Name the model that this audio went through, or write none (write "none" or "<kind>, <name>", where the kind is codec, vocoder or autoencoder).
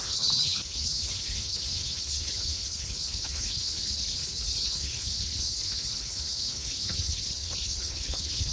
codec, HILCodec